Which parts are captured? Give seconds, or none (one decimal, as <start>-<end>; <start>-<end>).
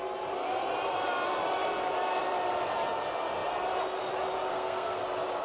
0.0-4.5; 5.0-5.4